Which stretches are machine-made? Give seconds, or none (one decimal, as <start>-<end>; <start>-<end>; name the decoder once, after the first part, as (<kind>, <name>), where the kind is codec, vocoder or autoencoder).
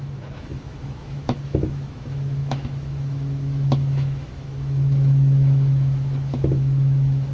0.0-7.3 (autoencoder, DAC-VAE)